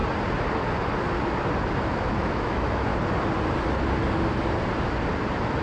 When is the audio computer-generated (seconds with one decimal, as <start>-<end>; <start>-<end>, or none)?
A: 1.9-2.9

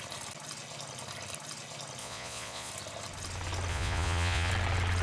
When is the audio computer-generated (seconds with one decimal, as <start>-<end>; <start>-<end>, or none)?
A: 2.0-2.7; 3.7-4.5

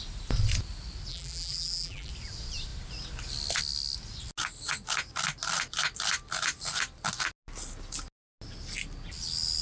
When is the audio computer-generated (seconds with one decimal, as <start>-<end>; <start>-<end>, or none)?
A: 1.1-2.1

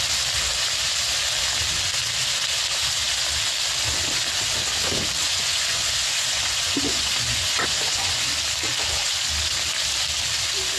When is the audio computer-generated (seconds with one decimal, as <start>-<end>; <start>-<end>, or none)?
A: 5.2-8.3

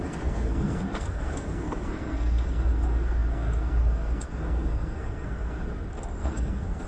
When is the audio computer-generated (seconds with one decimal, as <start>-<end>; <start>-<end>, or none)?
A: 0.0-5.6; 6.2-6.9

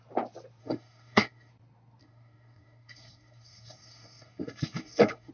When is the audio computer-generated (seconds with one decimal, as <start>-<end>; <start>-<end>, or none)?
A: 0.6-1.5; 2.0-5.3